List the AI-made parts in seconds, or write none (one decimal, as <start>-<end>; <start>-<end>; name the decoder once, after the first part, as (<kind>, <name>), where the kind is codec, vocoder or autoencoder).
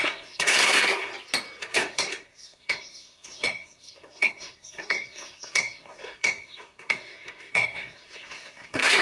0.0-1.1 (codec, SNAC); 1.6-9.0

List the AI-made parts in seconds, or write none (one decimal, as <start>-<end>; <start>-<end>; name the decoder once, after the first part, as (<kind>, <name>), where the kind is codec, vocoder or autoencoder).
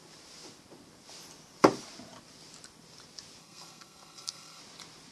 3.4-4.6 (codec, SNAC)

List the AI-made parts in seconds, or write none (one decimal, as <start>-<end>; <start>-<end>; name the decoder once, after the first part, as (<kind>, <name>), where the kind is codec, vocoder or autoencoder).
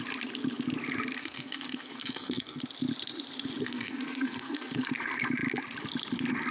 1.2-2.6 (codec, SNAC); 3.6-4.9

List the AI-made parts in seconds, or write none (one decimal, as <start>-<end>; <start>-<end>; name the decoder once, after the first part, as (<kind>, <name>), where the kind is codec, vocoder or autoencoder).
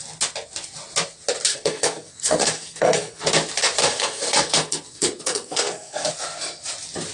1.5-3.2 (codec, SNAC); 3.8-6.1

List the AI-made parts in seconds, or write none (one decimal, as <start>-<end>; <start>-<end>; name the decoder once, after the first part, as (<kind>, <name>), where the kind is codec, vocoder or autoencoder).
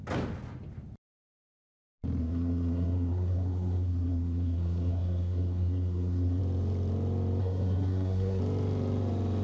2.2-6.4 (codec, SNAC); 7.4-8.4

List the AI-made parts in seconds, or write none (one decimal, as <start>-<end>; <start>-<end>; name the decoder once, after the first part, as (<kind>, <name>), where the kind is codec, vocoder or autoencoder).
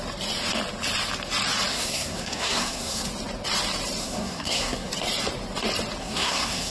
1.7-3.1 (codec, SNAC); 4.0-4.9; 6.0-6.7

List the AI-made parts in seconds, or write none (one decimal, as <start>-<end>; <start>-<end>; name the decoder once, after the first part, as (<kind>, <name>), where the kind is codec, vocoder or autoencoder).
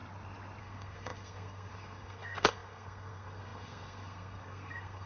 0.6-5.1 (codec, SNAC)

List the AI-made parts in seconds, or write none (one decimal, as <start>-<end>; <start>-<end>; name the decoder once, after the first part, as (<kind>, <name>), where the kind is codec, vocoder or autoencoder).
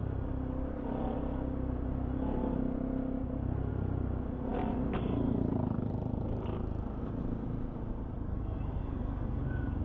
8.3-9.4 (codec, SNAC)